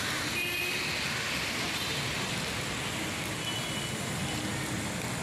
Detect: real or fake real